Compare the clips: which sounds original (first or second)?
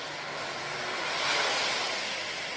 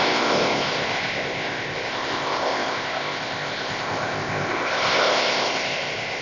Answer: first